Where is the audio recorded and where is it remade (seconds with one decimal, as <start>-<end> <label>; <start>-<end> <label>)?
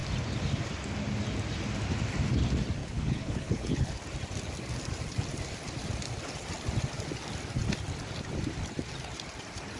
0.0-2.8 recorded; 2.8-4.0 remade; 4.0-9.8 recorded